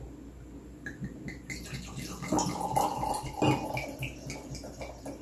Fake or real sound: real